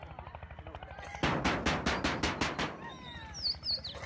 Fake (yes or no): no